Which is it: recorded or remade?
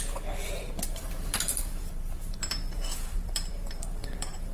remade